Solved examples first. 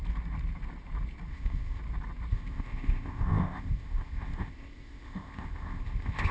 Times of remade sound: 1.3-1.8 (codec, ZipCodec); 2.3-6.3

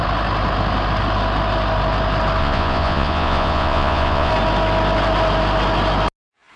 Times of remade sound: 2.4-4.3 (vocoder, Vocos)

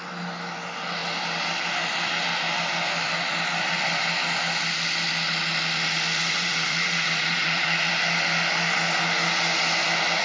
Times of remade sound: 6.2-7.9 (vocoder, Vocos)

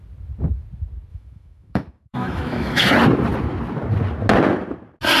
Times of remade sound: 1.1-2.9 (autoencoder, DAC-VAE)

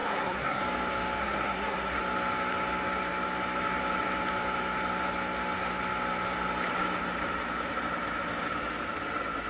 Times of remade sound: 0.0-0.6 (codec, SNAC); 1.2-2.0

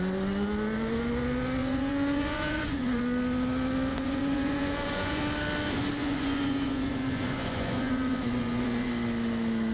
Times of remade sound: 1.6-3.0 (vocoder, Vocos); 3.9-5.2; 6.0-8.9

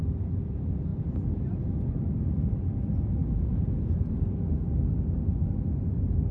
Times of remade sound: none